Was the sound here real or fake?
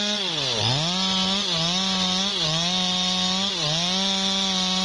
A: real